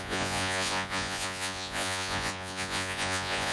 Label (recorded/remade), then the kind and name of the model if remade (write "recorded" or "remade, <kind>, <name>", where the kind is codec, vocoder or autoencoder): remade, vocoder, Vocos